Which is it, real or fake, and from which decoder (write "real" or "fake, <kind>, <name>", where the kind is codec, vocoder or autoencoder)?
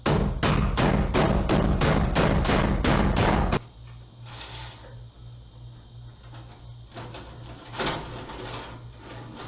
real